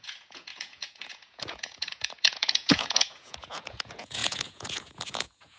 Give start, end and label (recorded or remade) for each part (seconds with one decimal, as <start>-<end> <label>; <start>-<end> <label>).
0.0-5.6 remade